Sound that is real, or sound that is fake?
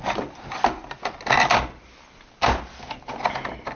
real